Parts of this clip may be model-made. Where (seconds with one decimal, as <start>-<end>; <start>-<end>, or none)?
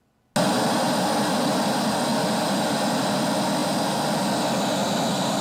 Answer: none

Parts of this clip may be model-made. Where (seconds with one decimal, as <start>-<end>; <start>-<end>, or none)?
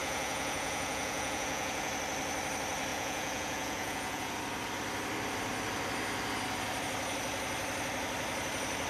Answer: 0.0-1.9; 2.9-4.3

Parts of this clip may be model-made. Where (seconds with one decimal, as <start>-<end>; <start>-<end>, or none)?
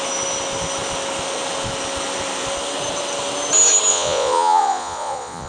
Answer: 3.9-5.5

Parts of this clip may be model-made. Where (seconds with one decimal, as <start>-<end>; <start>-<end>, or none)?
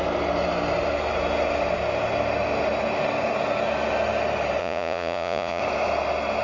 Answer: 4.6-5.6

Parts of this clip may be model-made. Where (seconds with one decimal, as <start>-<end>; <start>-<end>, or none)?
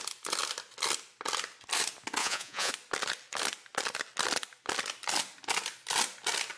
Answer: 2.2-2.7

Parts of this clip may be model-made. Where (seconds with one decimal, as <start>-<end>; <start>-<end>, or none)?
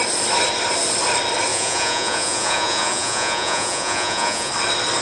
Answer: 1.5-4.5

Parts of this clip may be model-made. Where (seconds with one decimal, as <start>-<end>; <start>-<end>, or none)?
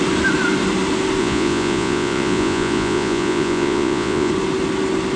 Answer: 1.2-4.3